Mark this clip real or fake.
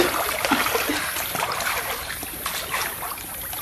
real